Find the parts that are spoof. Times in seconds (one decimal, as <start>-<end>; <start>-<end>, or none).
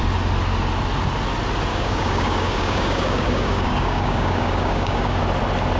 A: 1.7-5.2